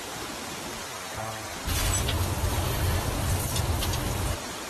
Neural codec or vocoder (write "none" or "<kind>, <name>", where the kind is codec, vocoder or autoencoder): none